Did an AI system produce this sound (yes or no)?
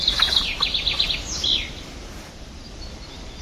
no